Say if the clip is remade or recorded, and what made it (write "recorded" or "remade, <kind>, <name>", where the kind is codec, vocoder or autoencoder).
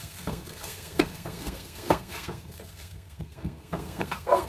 remade, codec, SNAC